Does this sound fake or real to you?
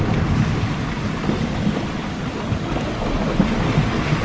real